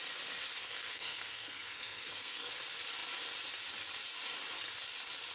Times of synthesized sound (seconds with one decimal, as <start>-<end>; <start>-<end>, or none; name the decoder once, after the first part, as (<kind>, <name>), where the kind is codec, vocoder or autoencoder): 0.6-2.5 (codec, SNAC)